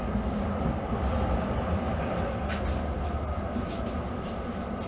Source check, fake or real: real